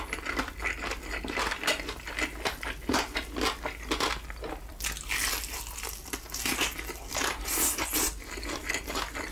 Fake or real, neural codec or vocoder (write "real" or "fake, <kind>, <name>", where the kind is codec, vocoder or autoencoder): real